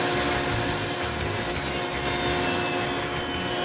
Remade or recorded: recorded